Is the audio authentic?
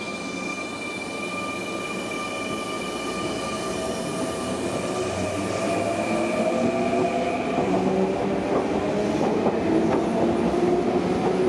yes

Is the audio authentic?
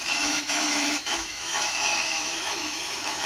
no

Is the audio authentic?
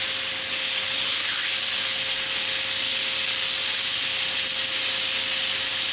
yes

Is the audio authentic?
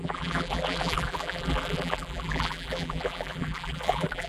no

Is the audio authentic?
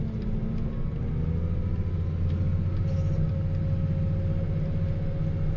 yes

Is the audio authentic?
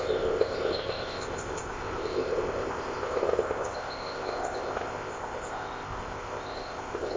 no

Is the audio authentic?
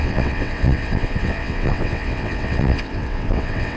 no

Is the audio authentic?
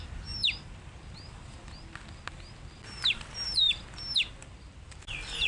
yes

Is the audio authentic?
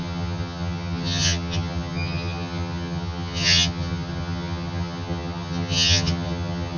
no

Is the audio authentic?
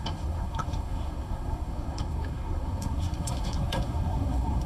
no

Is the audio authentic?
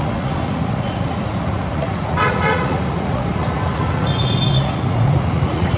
no